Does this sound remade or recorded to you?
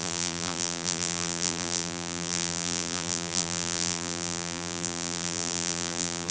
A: remade